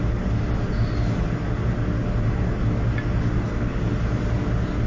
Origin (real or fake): real